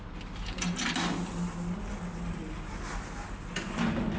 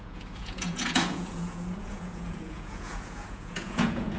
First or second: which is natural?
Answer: first